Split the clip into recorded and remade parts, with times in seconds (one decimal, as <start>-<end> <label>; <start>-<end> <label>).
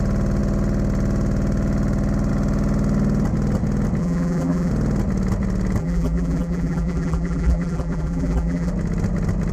0.0-4.0 recorded; 4.0-4.7 remade; 4.7-5.8 recorded; 5.8-8.7 remade; 8.7-9.5 recorded